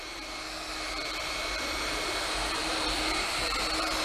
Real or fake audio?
fake